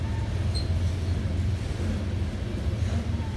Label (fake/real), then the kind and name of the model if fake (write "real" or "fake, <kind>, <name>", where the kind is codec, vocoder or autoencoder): real